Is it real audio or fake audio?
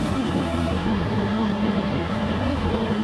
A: fake